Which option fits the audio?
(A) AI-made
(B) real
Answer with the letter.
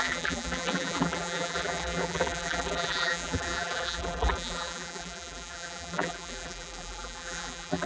A